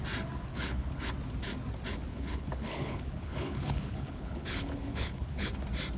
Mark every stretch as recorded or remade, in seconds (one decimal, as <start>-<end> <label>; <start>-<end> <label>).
0.0-0.5 recorded; 0.5-1.1 remade; 1.1-2.1 recorded; 2.1-5.5 remade; 5.5-6.0 recorded